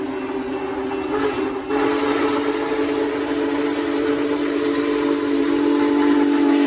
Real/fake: real